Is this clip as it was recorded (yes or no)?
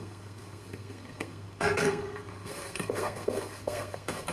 no